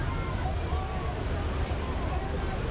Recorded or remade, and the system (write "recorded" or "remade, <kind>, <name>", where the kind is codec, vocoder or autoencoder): recorded